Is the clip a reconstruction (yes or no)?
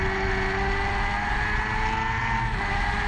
no